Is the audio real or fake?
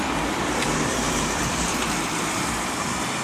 fake